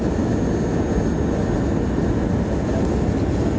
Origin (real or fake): real